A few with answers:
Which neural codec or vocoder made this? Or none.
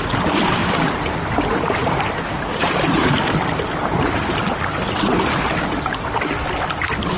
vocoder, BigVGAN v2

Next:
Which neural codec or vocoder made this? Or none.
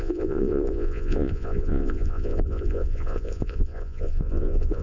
vocoder, Vocos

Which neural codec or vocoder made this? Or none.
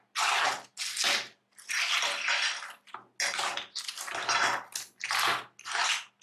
none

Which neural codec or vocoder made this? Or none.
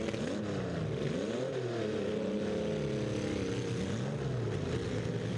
none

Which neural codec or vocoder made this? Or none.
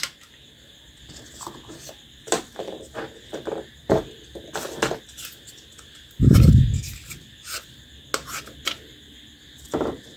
none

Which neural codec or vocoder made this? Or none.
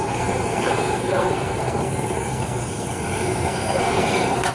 codec, SNAC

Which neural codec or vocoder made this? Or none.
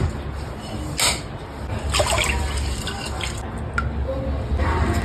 none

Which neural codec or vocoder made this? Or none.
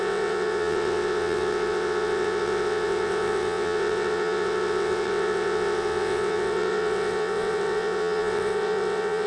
vocoder, WaveNeXt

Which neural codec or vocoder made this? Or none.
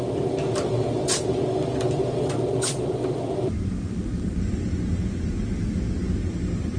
none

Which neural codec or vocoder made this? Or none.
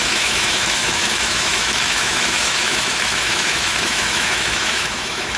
autoencoder, DAC-VAE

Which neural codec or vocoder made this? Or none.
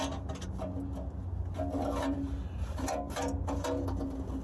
none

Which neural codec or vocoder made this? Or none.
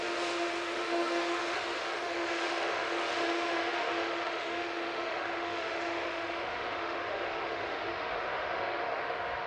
autoencoder, DAC-VAE